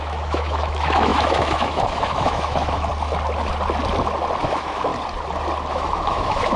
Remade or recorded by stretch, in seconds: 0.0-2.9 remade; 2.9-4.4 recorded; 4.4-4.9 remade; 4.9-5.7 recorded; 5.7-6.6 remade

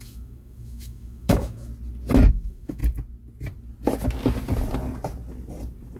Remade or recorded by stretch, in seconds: 0.0-1.7 remade; 1.7-2.3 recorded; 2.3-2.8 remade; 2.8-6.0 recorded

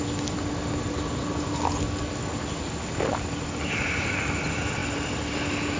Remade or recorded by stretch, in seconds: 0.0-5.8 recorded

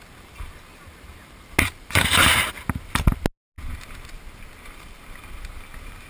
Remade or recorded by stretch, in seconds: 0.0-6.1 recorded

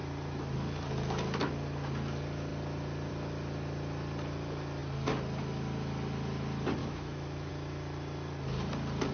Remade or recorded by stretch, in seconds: 0.0-6.8 recorded; 6.8-7.5 remade; 7.5-9.1 recorded

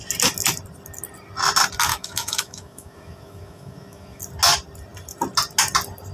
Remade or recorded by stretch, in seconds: 0.0-1.9 recorded; 1.9-4.2 remade; 4.2-6.1 recorded

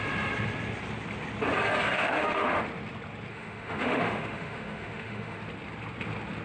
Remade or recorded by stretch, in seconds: 0.0-1.9 recorded; 1.9-2.6 remade; 2.6-3.3 recorded; 3.3-5.4 remade; 5.4-6.4 recorded

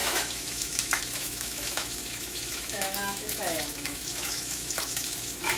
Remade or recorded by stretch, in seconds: 0.0-5.6 remade